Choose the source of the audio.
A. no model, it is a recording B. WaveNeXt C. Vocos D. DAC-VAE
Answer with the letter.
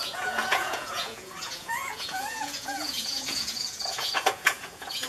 C